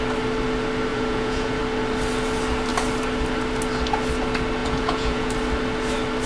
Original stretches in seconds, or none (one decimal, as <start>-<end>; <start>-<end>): 0.0-0.9; 1.6-4.6; 5.3-6.3